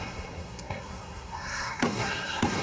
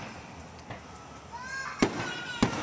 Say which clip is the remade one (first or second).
first